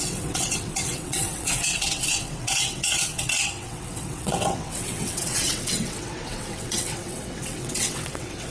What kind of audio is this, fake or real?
fake